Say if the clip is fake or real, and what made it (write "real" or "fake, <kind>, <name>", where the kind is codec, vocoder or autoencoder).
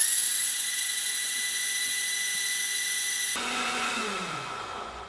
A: fake, vocoder, Vocos